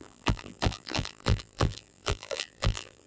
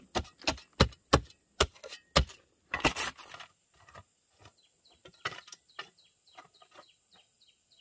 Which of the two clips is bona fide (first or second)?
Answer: second